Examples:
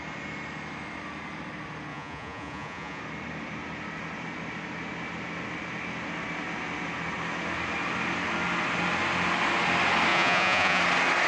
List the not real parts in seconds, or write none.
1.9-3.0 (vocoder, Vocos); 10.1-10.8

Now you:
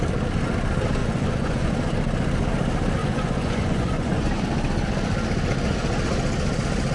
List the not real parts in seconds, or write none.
1.0-1.7 (vocoder, Vocos); 3.0-4.4

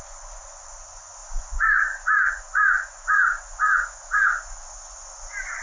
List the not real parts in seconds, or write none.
0.0-5.6 (vocoder, Vocos)

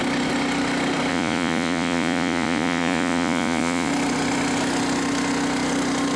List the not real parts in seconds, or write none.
1.1-3.9 (vocoder, Vocos)